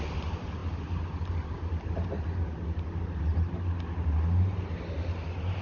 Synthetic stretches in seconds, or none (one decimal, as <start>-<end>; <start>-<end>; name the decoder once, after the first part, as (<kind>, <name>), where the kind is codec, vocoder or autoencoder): none